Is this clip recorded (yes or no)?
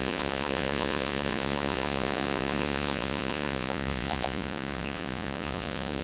no